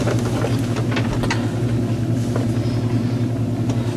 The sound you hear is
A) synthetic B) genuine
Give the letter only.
B